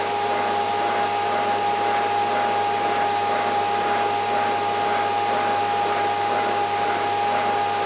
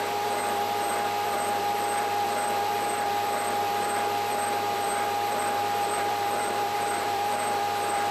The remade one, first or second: second